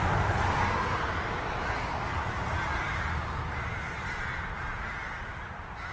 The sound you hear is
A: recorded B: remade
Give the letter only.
A